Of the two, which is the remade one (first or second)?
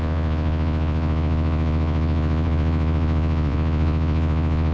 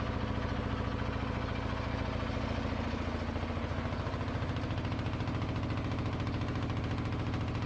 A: first